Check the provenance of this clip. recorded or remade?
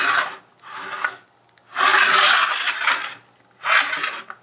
recorded